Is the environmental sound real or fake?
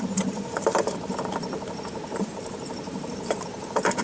fake